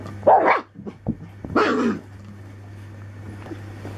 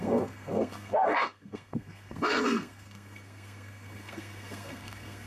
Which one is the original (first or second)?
first